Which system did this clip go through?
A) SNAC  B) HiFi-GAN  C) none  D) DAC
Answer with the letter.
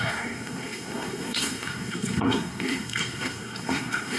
A